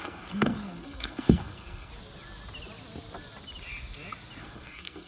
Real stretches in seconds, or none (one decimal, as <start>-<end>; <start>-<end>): 1.9-4.4